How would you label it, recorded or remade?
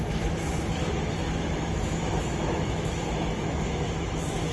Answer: remade